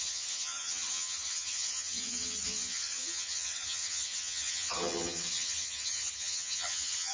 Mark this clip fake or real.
fake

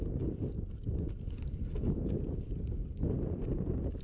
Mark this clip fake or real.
real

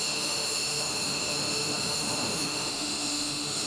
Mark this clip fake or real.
fake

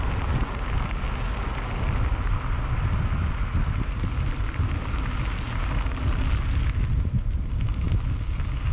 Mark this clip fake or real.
real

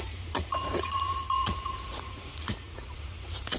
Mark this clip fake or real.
fake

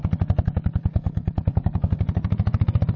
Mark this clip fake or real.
fake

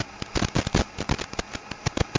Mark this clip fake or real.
real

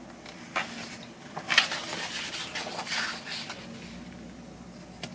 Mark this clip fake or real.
real